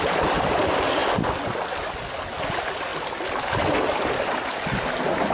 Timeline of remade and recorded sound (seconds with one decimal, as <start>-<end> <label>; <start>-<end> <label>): 0.0-5.3 recorded